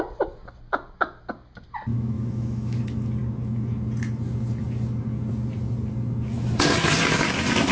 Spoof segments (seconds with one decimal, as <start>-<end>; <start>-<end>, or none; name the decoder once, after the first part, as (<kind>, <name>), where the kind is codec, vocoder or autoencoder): 1.9-2.8 (autoencoder, DAC-VAE)